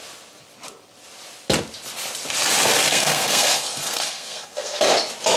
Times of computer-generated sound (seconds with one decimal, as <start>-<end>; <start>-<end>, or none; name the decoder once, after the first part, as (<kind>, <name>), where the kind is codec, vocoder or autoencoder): 2.9-4.8 (codec, SNAC)